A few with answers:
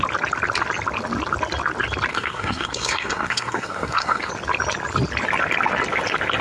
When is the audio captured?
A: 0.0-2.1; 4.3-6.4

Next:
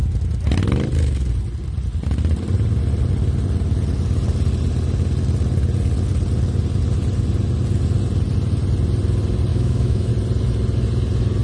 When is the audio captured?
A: 0.0-9.5; 10.1-11.4

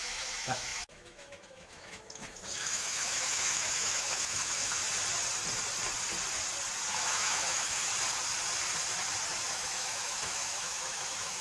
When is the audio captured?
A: 4.8-6.9; 7.9-9.5